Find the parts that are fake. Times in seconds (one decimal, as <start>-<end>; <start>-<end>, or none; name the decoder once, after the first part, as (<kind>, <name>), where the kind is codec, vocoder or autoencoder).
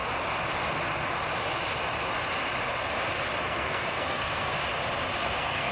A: 3.4-4.5 (codec, SNAC); 5.2-5.7